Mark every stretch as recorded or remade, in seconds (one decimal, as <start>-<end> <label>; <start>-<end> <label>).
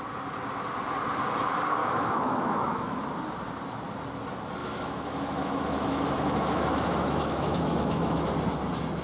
0.0-1.8 recorded; 1.8-3.0 remade; 3.0-4.6 recorded; 4.6-8.3 remade; 8.3-9.0 recorded